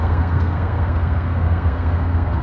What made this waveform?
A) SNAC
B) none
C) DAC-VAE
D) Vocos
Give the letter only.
A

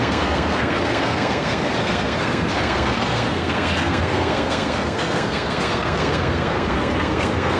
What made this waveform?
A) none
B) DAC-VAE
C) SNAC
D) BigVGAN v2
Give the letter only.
C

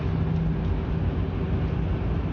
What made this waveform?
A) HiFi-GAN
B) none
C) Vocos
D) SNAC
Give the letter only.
B